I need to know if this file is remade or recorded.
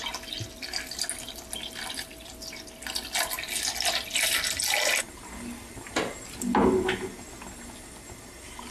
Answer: recorded